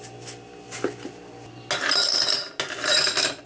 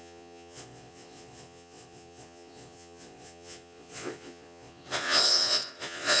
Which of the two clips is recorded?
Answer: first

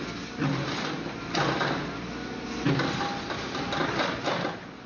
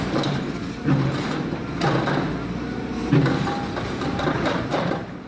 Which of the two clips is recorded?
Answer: first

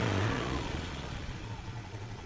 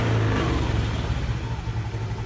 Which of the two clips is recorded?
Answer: second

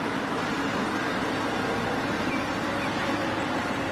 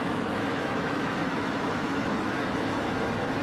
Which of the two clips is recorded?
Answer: first